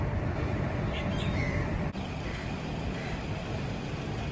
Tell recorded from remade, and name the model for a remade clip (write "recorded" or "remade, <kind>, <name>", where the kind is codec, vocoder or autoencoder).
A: remade, vocoder, BigVGAN v2